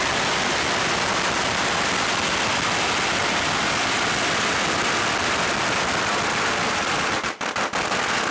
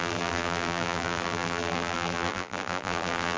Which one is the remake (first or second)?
second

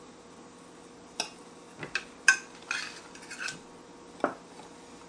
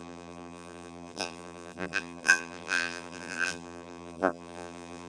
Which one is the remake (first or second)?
second